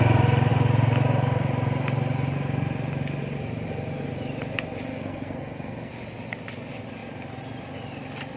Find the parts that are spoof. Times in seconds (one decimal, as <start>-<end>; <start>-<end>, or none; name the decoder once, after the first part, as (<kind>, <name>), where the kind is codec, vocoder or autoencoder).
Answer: 4.9-5.9 (codec, SNAC)